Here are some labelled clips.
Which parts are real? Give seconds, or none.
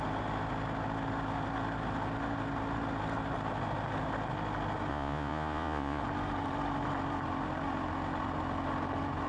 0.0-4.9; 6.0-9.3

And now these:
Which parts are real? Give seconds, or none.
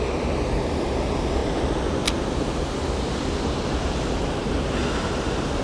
0.0-5.6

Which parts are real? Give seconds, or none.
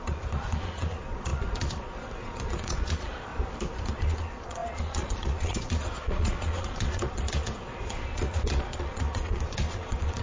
3.3-3.9